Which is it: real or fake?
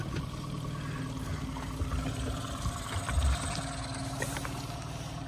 real